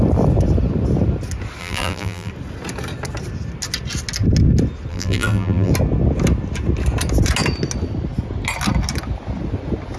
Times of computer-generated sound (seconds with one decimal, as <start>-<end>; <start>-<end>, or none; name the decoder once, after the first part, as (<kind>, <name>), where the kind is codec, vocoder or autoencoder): 1.6-2.3 (vocoder, BigVGAN v2); 4.9-5.7